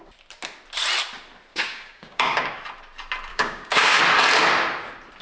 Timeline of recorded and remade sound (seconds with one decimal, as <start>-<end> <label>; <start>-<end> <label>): 0.0-1.5 recorded; 1.5-2.6 remade; 2.6-3.3 recorded; 3.3-4.0 remade; 4.0-5.2 recorded